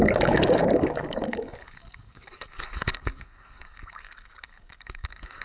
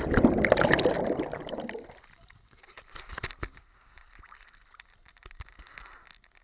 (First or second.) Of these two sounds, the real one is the second